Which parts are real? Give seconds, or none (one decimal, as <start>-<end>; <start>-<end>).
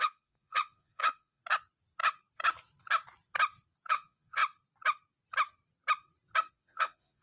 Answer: 1.4-3.9; 4.4-6.5